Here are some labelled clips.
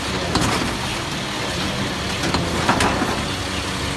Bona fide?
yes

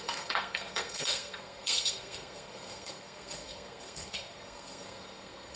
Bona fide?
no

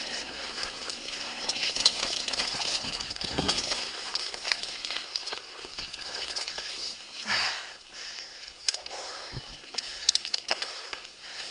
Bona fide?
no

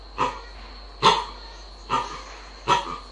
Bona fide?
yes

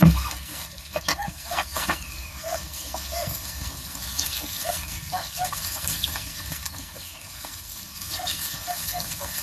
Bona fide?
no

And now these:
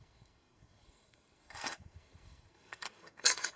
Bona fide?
no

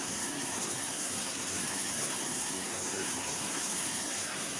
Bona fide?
no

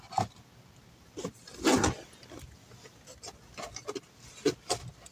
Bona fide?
yes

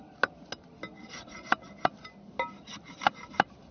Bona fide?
yes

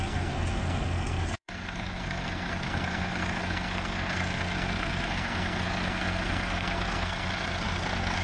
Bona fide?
no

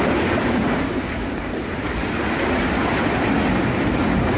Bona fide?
yes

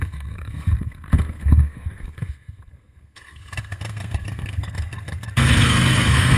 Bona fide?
no